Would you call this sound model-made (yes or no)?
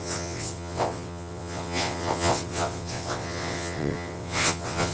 yes